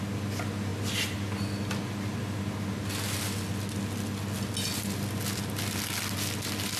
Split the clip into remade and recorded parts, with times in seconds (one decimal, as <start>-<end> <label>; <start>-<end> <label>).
0.0-6.8 recorded